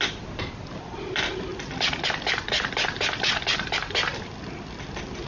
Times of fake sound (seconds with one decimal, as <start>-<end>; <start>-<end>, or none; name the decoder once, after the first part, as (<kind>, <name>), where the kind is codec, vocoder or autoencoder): none